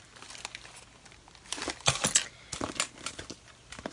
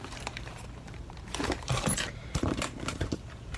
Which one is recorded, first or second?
first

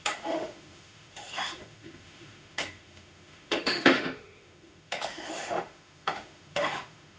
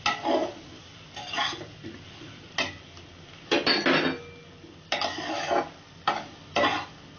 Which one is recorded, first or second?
second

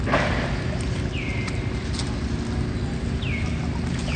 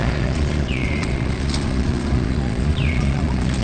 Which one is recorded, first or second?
first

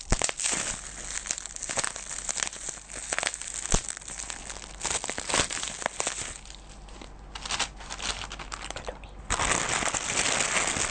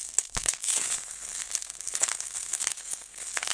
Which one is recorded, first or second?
first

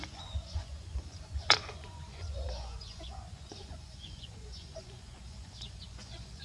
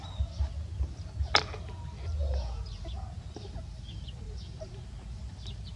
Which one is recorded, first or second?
second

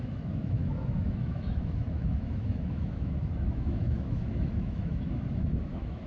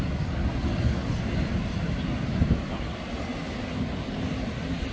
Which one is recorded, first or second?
second